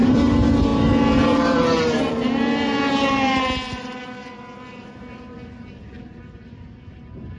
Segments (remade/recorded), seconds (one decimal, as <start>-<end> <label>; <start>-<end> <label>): 0.0-4.2 remade; 4.2-4.7 recorded; 4.7-7.4 remade